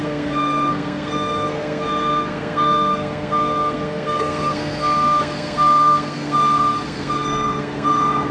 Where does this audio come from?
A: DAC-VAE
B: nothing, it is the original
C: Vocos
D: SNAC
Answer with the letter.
D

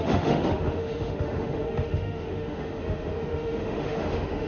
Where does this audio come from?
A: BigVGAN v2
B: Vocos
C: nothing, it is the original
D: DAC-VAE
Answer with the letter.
D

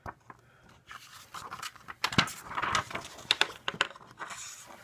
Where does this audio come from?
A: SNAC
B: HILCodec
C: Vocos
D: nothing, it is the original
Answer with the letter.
D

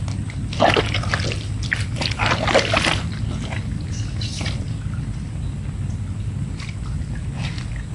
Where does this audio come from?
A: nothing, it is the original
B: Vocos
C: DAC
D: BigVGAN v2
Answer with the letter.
A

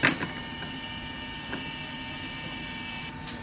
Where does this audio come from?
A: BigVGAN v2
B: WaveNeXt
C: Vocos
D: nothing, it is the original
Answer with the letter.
D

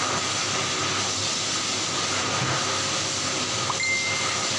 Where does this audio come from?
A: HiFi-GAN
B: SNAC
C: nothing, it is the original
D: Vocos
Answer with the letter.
C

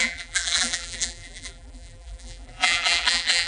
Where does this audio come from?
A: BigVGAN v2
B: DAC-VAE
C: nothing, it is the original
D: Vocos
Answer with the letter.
A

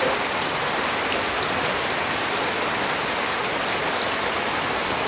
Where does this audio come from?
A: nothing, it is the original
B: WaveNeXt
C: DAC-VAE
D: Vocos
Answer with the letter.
A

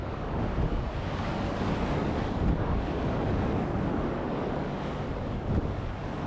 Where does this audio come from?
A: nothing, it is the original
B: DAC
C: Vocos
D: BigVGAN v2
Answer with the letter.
B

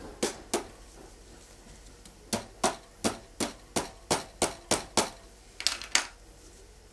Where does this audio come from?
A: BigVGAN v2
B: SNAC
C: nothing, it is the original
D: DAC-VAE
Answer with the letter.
C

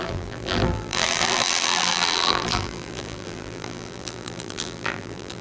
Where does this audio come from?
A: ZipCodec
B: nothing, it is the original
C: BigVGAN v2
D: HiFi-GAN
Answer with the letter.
C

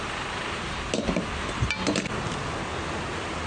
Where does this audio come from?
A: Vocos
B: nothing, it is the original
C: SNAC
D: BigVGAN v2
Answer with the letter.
B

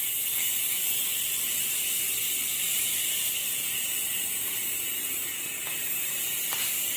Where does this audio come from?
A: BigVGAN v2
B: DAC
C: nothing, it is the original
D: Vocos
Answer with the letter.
A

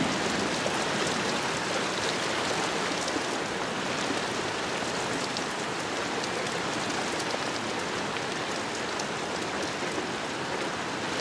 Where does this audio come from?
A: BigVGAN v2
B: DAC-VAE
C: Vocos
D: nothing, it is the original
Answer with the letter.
D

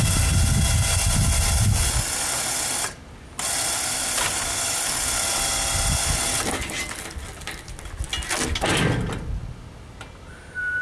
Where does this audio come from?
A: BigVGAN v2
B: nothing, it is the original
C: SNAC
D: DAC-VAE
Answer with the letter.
B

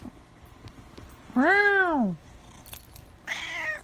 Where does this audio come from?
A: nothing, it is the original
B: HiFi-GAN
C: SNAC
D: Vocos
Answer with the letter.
A